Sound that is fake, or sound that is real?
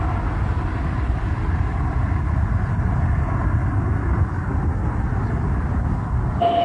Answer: real